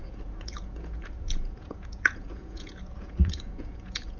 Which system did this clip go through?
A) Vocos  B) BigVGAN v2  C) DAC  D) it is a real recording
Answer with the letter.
A